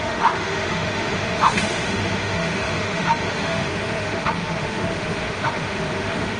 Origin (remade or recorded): remade